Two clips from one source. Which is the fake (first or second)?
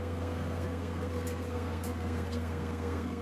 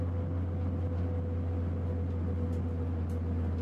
first